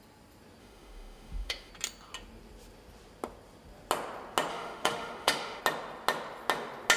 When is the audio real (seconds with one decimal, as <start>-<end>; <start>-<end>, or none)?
0.0-0.6; 1.7-4.5; 5.6-7.0